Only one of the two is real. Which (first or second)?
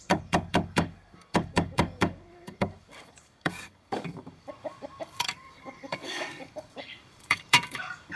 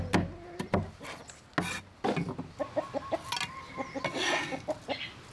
second